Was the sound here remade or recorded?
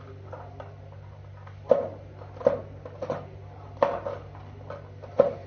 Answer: recorded